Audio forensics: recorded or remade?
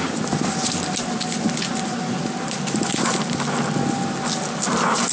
recorded